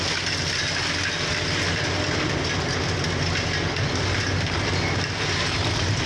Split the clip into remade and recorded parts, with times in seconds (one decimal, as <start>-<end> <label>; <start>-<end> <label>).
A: 0.0-6.1 recorded